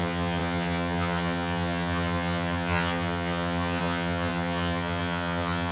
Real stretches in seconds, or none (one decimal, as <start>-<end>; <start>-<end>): none